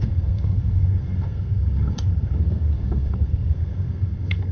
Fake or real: fake